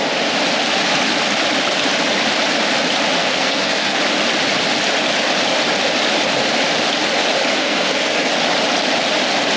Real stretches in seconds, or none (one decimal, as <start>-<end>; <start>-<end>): 0.0-3.2; 4.0-7.5; 8.3-9.6